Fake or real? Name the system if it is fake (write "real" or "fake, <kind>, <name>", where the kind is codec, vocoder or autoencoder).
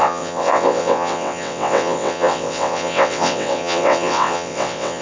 fake, vocoder, WaveNeXt